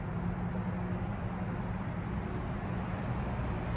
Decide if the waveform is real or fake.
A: real